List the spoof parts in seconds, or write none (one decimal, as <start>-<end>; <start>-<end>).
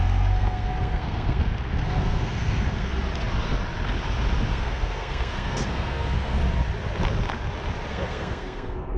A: 0.0-2.9; 4.5-6.4; 7.9-9.0